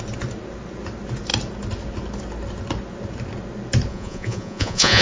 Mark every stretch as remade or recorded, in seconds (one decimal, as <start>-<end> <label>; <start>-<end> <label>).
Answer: 0.0-3.9 recorded; 3.9-5.0 remade